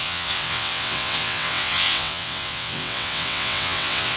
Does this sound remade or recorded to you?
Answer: remade